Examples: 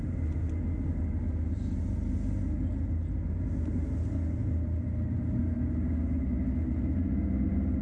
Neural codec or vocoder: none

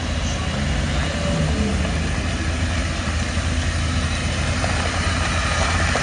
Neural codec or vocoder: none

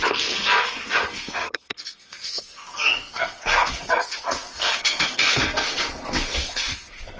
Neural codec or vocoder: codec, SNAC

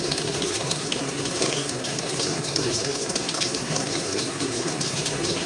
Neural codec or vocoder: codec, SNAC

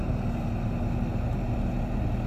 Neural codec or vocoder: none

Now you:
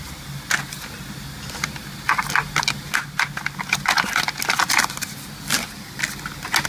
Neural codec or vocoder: none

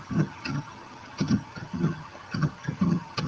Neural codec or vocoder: vocoder, HiFi-GAN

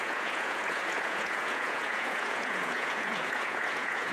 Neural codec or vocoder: vocoder, Vocos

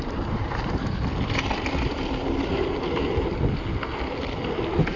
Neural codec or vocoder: none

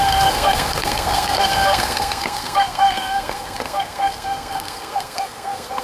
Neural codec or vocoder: codec, SNAC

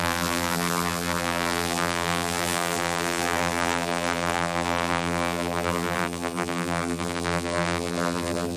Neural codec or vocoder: vocoder, BigVGAN v2